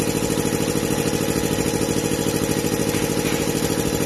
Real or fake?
real